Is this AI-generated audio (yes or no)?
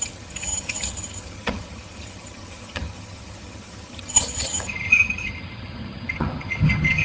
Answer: yes